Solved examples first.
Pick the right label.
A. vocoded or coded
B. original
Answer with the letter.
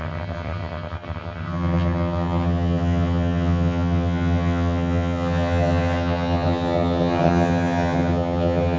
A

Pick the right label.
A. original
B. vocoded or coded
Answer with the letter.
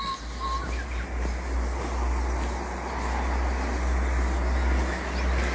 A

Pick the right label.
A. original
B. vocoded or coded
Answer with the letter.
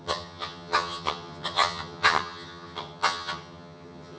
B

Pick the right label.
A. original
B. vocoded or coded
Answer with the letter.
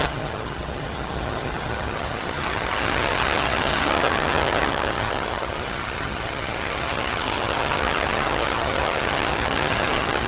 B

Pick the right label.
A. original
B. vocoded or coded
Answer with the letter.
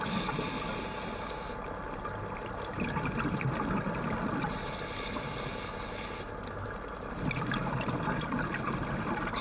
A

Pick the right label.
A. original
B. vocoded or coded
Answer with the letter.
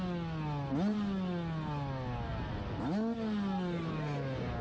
A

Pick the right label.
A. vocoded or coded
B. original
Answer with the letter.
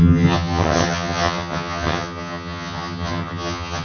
A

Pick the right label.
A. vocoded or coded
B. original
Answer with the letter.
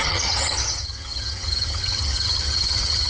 A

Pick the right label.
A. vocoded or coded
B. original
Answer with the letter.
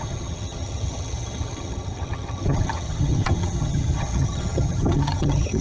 A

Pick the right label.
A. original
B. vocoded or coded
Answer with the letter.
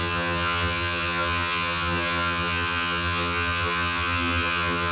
B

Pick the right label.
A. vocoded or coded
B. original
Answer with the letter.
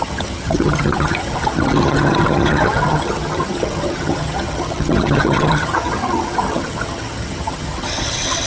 A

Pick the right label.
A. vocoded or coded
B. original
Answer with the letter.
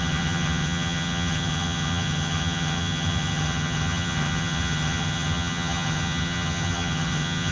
A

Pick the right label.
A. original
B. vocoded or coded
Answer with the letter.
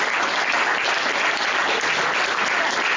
A